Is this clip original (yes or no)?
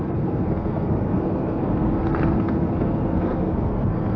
no